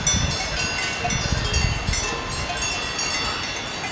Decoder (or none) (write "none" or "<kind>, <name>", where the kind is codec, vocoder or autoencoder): none